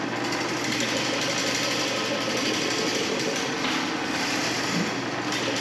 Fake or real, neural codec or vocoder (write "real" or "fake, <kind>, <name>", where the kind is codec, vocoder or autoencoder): real